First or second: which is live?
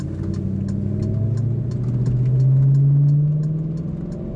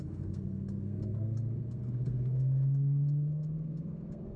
first